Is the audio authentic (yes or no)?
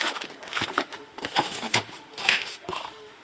no